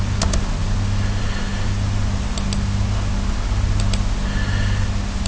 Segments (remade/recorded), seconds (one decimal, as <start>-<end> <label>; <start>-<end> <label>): 0.0-5.3 recorded

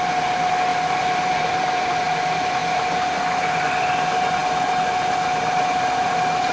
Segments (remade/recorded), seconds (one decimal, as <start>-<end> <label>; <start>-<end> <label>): 0.0-0.7 recorded; 0.7-2.0 remade; 2.0-6.5 recorded